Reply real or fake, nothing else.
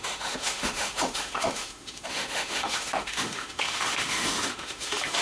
fake